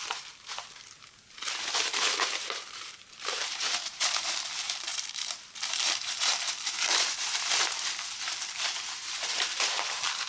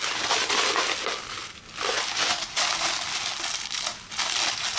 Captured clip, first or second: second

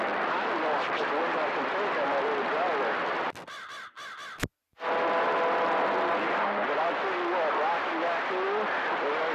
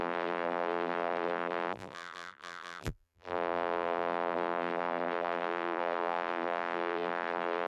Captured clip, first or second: first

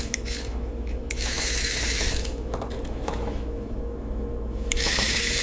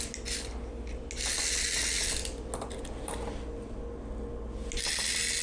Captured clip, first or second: second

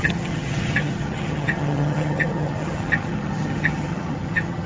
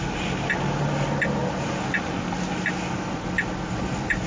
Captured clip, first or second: second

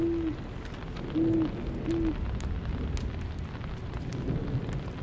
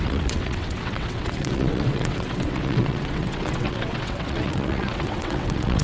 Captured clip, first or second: first